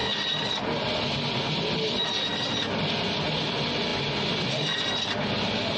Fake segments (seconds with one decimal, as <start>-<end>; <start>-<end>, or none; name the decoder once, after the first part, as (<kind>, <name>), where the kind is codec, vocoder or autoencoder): none

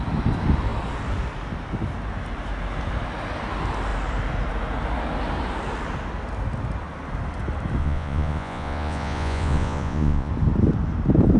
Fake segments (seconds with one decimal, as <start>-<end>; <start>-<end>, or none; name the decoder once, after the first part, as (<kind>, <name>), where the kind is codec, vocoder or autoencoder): 7.8-10.3 (vocoder, Vocos)

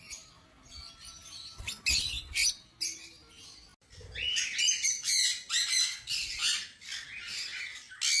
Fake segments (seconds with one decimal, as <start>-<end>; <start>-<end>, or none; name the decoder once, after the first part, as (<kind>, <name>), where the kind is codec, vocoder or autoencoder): none

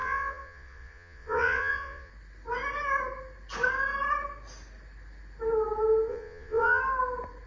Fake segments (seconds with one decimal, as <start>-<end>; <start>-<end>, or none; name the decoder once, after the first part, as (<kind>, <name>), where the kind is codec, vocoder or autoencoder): 0.0-2.1 (vocoder, Vocos); 6.1-6.8

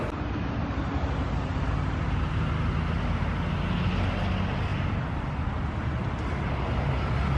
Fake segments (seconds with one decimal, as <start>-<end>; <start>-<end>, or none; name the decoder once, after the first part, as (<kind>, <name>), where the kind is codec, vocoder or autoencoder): none

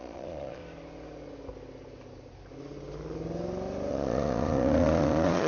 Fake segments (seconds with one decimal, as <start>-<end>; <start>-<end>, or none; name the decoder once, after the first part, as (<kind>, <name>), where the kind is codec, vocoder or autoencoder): 0.0-0.6 (vocoder, Vocos); 3.9-5.5

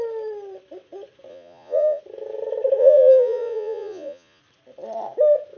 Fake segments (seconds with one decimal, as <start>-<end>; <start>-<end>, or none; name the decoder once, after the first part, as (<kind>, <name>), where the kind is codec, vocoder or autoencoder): 1.3-2.0 (vocoder, Vocos); 2.8-4.4

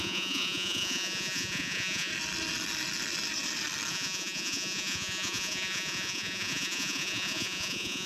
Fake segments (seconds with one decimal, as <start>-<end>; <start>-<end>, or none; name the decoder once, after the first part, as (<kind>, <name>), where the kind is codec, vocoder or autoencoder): 0.0-2.1 (vocoder, Vocos); 3.9-8.1